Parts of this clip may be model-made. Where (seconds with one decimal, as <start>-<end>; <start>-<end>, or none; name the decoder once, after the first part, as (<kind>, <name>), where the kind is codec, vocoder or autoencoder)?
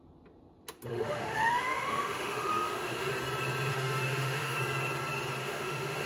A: 0.9-3.1 (autoencoder, DAC-VAE); 3.7-4.6; 5.4-6.1